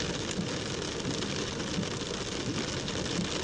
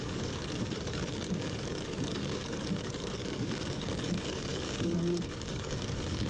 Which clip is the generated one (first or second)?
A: second